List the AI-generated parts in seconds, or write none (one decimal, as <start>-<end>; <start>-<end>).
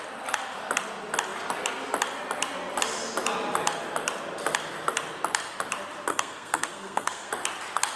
6.1-7.3